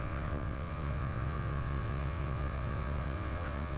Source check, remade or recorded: remade